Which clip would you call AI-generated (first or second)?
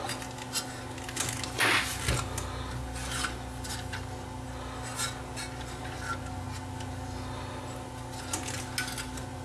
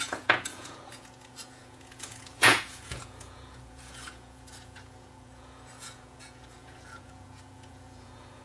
second